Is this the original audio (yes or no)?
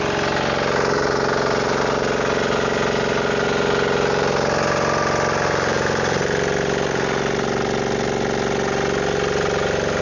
yes